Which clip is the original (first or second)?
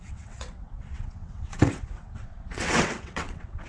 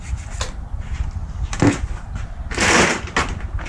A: second